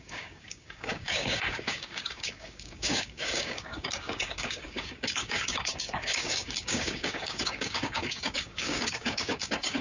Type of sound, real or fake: fake